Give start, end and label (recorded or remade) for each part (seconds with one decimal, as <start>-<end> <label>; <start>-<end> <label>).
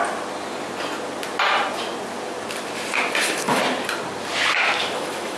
0.0-3.2 recorded; 3.2-3.6 remade; 3.6-4.8 recorded; 4.8-5.4 remade